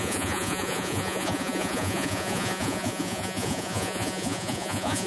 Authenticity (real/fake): fake